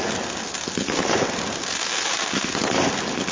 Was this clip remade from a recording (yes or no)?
no